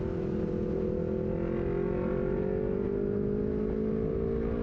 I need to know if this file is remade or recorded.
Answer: recorded